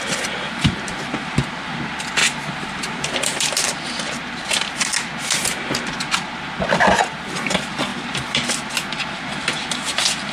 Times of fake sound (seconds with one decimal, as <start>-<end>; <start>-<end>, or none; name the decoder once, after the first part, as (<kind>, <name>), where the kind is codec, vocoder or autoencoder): 2.2-4.7 (vocoder, BigVGAN v2); 7.9-8.7